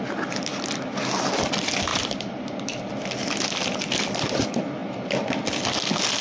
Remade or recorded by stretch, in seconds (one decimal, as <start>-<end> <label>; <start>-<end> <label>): 0.0-1.9 recorded; 1.9-2.9 remade; 2.9-6.2 recorded